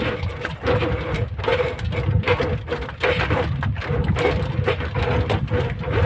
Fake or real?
real